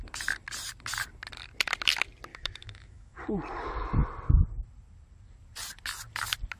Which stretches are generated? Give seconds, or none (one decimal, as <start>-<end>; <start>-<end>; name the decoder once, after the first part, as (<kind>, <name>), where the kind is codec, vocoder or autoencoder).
2.3-3.2 (autoencoder, DAC-VAE)